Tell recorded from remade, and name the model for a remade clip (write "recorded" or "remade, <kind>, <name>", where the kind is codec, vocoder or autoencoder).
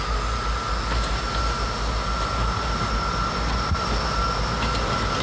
recorded